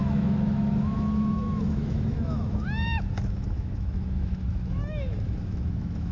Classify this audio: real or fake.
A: fake